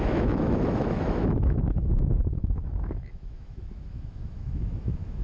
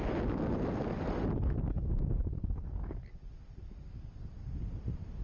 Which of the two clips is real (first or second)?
second